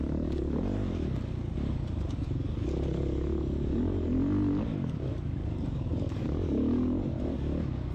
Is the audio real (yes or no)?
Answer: no